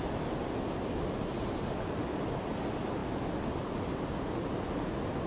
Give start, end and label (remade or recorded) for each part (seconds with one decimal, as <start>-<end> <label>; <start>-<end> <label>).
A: 0.0-5.3 recorded